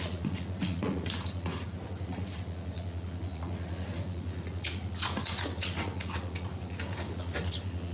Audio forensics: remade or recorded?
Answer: remade